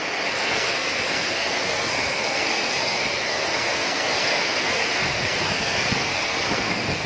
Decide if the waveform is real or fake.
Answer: fake